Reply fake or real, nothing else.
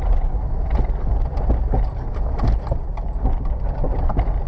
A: real